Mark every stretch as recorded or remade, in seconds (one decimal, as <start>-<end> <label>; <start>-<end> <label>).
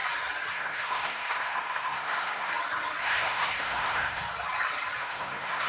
0.0-0.5 recorded; 0.5-2.5 remade; 2.5-3.0 recorded; 3.0-4.2 remade; 4.2-5.0 recorded; 5.0-5.7 remade